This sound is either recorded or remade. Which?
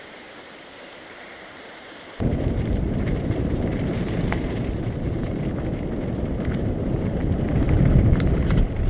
remade